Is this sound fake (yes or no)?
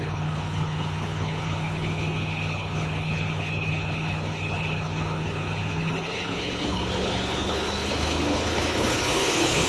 yes